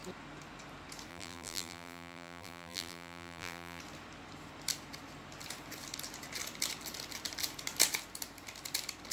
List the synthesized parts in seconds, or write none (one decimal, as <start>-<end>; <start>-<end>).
1.1-3.8